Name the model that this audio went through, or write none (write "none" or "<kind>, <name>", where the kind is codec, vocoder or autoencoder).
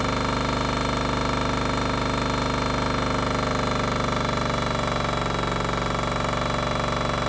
none